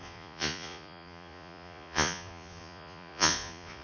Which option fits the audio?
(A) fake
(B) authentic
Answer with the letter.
A